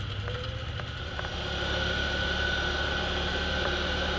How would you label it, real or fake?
real